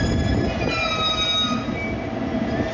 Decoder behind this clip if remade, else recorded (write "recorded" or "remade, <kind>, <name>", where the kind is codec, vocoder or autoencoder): recorded